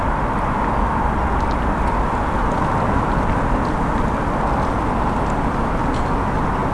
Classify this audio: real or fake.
real